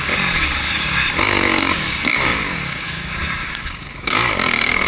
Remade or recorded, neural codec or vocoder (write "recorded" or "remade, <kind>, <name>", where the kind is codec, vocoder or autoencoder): remade, codec, DAC